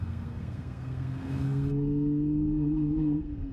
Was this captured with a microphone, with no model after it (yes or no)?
no